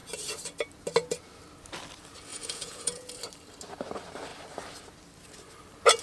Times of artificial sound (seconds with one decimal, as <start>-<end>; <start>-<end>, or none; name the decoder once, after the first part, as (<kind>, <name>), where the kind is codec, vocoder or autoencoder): 2.3-3.1 (vocoder, Vocos)